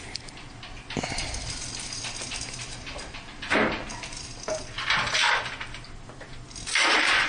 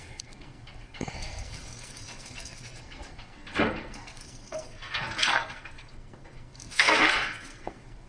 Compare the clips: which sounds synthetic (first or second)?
second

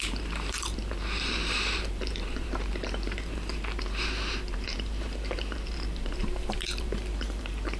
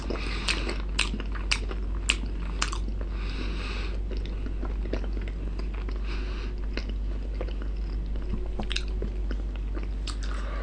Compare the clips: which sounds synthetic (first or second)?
first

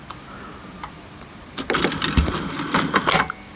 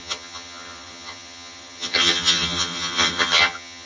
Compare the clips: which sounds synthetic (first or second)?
second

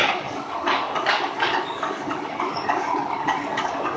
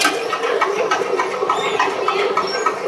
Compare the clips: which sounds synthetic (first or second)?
first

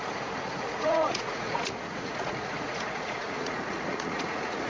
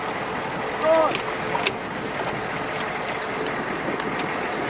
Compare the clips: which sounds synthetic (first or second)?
first